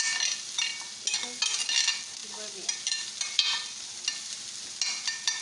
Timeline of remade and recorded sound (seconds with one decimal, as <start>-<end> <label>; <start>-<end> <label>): 0.0-2.2 recorded; 2.2-4.0 remade; 4.0-5.4 recorded